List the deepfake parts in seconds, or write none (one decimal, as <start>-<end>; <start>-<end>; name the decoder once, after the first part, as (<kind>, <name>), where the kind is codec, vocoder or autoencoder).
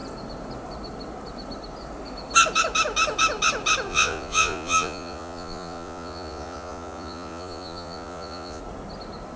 3.9-8.6 (vocoder, Vocos)